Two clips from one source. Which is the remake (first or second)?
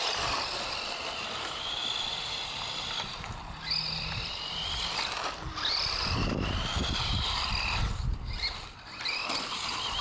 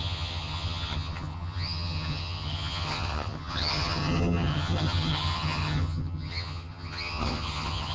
second